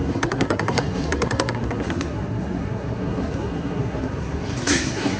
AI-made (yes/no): yes